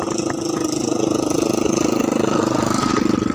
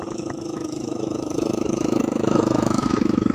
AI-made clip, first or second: second